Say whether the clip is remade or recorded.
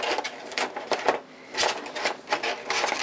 recorded